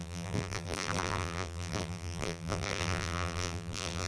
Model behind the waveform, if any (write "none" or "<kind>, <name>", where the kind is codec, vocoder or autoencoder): vocoder, BigVGAN v2